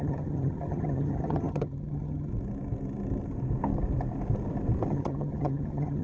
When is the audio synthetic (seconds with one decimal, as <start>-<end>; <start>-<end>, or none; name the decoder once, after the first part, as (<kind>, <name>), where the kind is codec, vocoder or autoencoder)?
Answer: 0.0-2.3 (vocoder, HiFi-GAN); 4.9-6.0